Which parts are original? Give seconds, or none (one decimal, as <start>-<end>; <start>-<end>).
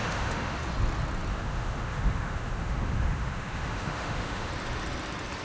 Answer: 0.6-1.3; 4.5-5.4